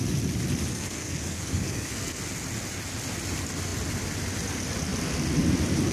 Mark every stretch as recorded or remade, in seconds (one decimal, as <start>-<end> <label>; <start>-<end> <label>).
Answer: 0.0-0.7 recorded; 0.7-2.2 remade; 2.2-5.9 recorded